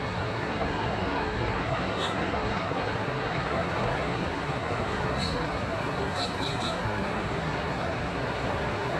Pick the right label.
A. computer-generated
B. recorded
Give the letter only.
A